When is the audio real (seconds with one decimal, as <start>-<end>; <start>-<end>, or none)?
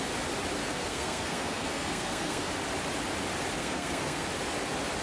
0.0-0.6; 2.5-3.6; 4.2-5.0